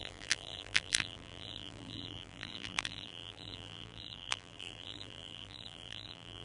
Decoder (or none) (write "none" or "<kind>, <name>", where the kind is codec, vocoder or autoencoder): vocoder, BigVGAN v2